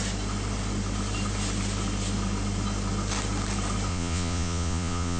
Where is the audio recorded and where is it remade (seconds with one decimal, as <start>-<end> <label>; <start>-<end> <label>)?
0.0-3.9 recorded; 3.9-5.2 remade